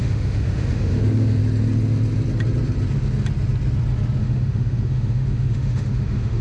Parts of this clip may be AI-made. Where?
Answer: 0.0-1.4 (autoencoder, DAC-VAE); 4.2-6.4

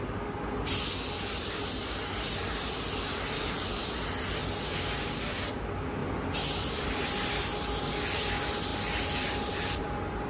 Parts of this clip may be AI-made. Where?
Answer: none